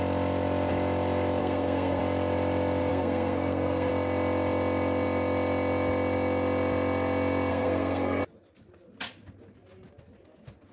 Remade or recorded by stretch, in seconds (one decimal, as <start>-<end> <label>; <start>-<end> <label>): 0.0-1.4 recorded; 1.4-2.0 remade; 2.0-2.9 recorded; 2.9-3.9 remade; 3.9-7.5 recorded; 7.5-8.2 remade; 8.2-10.7 recorded